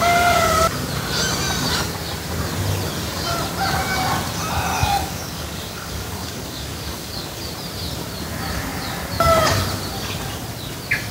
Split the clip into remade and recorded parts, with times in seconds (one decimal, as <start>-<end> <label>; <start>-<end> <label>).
0.0-4.8 recorded; 4.8-7.5 remade; 7.5-11.1 recorded

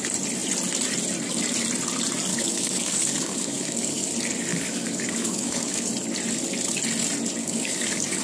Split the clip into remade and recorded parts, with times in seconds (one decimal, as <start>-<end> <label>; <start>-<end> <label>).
0.0-2.3 recorded; 2.3-4.1 remade; 4.1-4.5 recorded; 4.5-5.9 remade; 5.9-7.4 recorded; 7.4-8.2 remade